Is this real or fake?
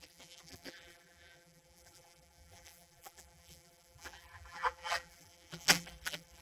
fake